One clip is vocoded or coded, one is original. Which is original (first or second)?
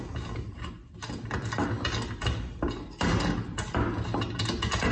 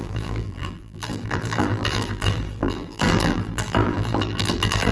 first